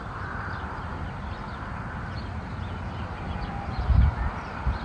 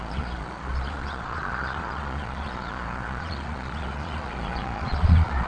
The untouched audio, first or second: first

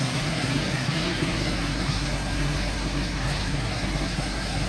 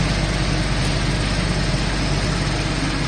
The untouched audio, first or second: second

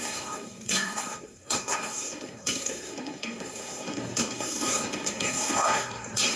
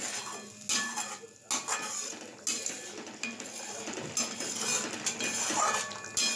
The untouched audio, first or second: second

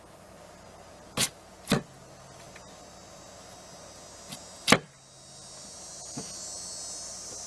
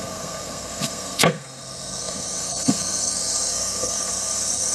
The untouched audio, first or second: first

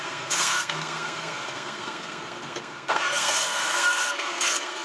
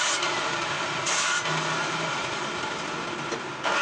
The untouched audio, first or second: second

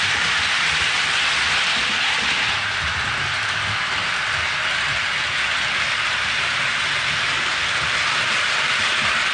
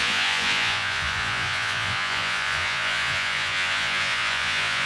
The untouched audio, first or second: first